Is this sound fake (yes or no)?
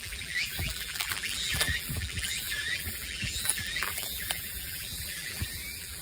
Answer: yes